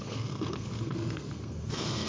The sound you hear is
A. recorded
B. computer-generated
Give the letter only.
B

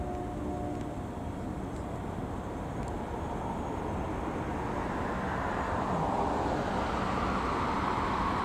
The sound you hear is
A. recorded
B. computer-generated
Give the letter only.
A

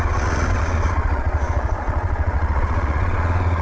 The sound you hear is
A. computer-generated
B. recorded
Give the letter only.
A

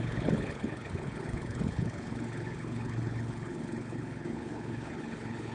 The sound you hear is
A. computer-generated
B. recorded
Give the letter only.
A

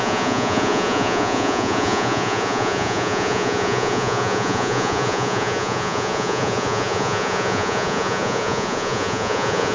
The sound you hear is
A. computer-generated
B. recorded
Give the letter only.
A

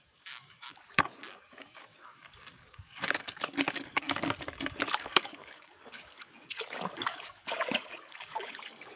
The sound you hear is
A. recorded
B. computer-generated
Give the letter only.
B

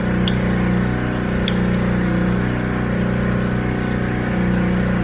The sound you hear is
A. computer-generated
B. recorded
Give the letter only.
B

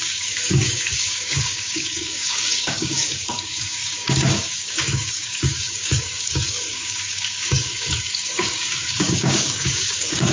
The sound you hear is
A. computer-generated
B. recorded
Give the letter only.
A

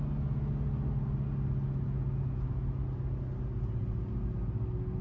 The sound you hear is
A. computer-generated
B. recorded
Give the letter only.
B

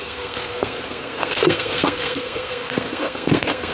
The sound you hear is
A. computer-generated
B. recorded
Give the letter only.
A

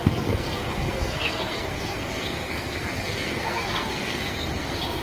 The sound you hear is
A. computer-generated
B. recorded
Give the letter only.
A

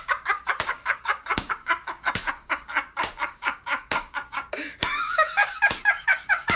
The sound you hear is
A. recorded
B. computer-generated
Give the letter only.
B